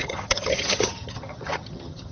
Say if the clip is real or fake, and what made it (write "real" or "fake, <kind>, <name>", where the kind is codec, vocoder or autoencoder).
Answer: fake, vocoder, HiFi-GAN